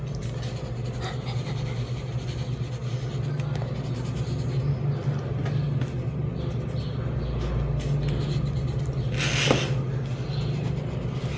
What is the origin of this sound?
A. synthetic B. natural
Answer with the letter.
B